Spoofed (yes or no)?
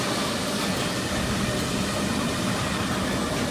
no